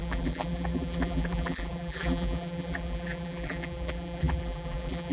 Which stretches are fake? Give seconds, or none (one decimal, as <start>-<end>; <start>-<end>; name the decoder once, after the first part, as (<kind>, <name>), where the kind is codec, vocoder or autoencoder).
0.0-5.1 (vocoder, BigVGAN v2)